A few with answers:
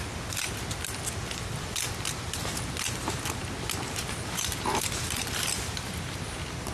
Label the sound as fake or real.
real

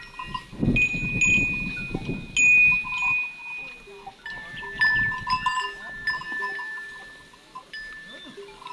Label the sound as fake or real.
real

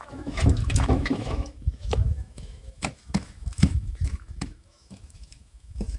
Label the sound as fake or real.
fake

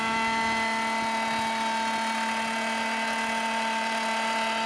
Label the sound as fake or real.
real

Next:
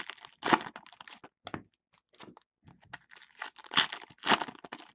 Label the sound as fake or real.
real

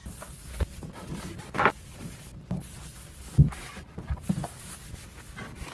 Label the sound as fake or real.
real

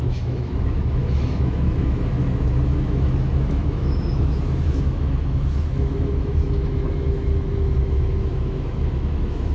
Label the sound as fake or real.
fake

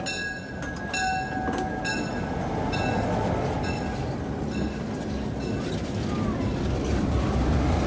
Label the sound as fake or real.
real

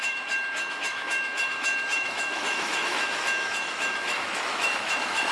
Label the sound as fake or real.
fake